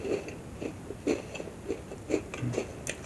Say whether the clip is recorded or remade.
recorded